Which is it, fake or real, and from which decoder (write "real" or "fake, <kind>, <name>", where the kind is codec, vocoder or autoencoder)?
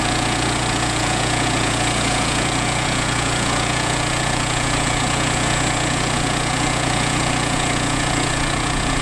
fake, vocoder, Vocos